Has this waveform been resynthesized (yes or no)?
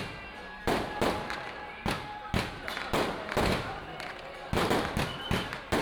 no